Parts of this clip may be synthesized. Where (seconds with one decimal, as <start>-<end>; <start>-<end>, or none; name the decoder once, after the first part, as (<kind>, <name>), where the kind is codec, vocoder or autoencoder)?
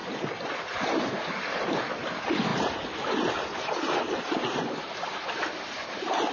2.5-6.3 (vocoder, BigVGAN v2)